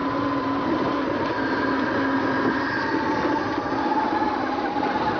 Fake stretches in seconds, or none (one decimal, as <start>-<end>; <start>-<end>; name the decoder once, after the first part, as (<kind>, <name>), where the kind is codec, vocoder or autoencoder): none